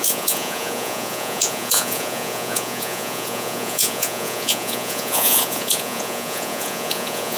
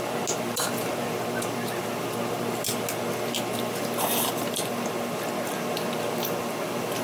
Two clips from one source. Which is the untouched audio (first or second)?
second